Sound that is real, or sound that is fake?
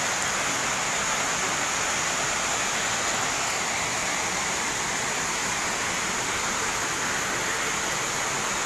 real